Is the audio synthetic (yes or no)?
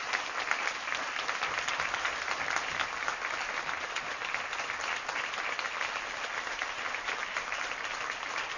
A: no